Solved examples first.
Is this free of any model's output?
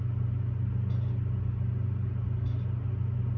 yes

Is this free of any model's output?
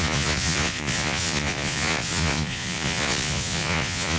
no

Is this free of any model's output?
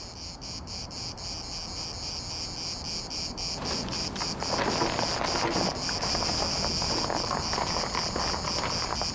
yes